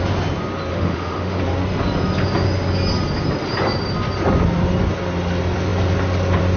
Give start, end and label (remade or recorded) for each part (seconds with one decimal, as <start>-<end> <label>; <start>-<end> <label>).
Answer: 0.0-0.7 recorded; 0.7-1.4 remade; 1.4-6.6 recorded